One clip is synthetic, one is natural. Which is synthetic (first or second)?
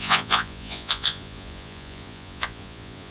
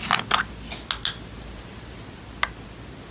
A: first